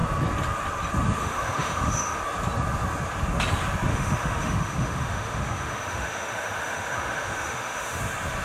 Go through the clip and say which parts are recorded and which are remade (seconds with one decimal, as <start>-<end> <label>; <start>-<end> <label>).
0.0-1.2 recorded; 1.2-2.2 remade; 2.2-3.9 recorded; 3.9-8.0 remade; 8.0-8.4 recorded